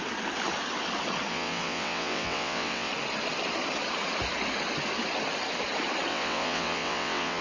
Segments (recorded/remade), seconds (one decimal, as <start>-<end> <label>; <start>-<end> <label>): 0.0-1.3 recorded; 1.3-2.9 remade; 2.9-6.1 recorded; 6.1-7.4 remade